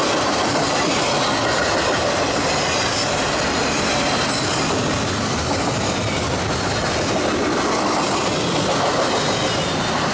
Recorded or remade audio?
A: recorded